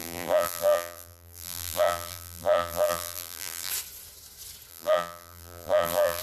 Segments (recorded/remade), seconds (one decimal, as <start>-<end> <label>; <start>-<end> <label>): 0.0-3.7 remade; 3.7-4.7 recorded; 4.7-6.2 remade